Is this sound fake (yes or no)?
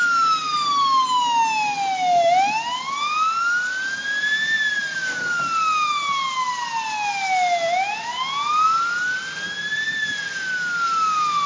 no